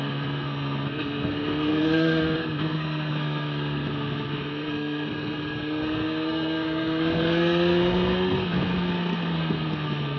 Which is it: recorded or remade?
remade